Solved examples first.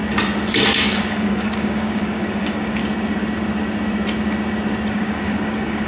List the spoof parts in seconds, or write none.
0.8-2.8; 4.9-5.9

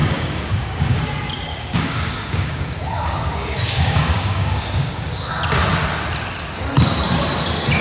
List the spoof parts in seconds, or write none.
0.0-1.0; 1.5-5.3

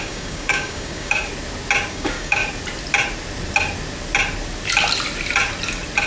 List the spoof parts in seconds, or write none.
0.0-1.3; 1.9-2.4

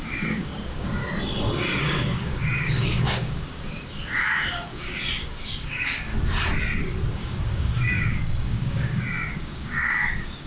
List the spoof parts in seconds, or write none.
0.0-1.0; 1.8-6.1; 7.1-10.5